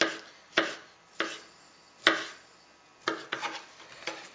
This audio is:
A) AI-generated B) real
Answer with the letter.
B